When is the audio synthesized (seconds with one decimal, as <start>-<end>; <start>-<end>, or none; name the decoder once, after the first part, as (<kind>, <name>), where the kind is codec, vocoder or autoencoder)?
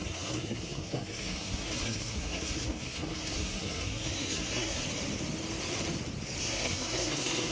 0.0-4.8 (codec, SNAC); 6.4-7.5